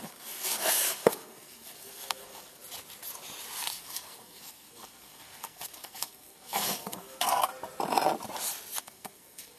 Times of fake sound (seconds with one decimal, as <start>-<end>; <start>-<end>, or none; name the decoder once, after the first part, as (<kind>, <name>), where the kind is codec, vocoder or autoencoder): 0.0-2.6 (codec, SNAC); 3.6-7.5; 8.8-9.6